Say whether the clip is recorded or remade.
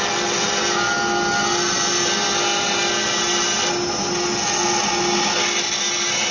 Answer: recorded